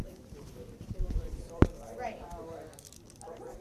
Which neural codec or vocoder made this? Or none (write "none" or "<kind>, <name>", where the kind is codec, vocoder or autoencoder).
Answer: none